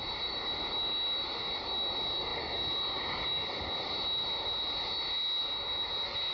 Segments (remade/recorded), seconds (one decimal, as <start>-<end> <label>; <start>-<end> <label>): 0.0-6.3 recorded